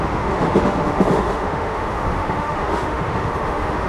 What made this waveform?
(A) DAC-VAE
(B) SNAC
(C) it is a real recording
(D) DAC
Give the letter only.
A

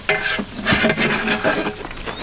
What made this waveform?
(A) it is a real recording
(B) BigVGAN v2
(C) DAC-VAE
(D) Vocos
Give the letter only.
A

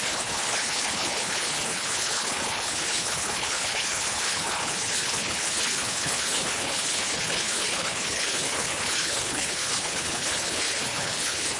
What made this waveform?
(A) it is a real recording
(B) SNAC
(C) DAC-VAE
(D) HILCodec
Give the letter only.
D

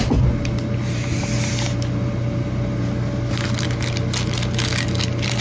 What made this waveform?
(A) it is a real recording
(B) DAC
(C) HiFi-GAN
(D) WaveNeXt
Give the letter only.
A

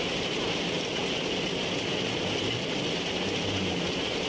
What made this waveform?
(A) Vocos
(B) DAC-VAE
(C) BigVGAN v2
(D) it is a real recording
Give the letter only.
D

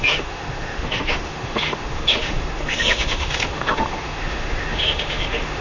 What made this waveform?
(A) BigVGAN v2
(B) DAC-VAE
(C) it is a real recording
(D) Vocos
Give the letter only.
B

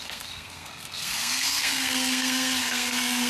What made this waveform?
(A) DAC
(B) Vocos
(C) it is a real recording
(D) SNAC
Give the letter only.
D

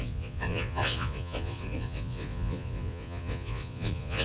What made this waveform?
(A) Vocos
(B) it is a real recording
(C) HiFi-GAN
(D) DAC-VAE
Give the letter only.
A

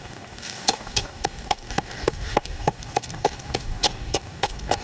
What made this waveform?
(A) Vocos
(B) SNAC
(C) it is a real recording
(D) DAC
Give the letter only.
D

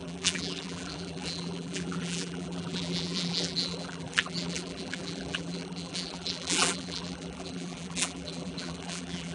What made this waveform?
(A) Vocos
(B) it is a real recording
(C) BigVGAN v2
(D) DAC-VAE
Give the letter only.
C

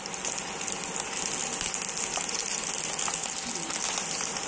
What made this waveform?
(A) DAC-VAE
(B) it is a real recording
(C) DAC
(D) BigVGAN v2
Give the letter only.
B